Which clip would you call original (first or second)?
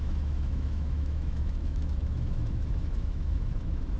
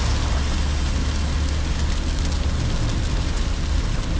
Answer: second